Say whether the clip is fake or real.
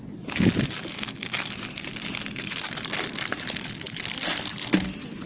real